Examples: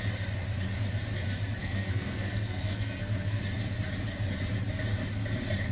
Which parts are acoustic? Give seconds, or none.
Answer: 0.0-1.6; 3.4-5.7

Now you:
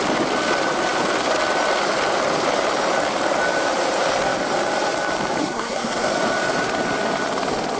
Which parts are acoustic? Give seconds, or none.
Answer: 0.0-5.4; 6.1-7.8